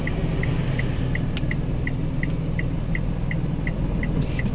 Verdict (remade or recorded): recorded